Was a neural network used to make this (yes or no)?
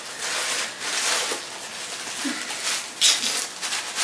no